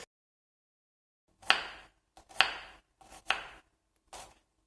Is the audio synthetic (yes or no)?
no